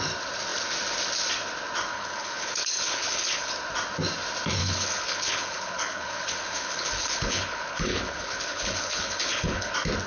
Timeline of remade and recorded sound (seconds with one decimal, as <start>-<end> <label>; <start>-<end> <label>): 0.0-1.9 recorded; 1.9-3.5 remade; 3.5-4.6 recorded; 4.6-9.7 remade; 9.7-10.1 recorded